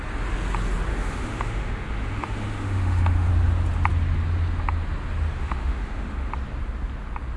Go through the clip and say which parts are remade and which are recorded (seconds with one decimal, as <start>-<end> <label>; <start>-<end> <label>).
0.0-0.9 recorded; 0.9-3.3 remade; 3.3-5.4 recorded; 5.4-6.3 remade; 6.3-7.4 recorded